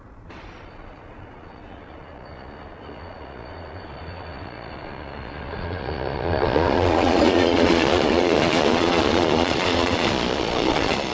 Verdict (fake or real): fake